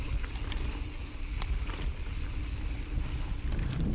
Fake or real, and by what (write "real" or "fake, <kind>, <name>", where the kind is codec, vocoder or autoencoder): real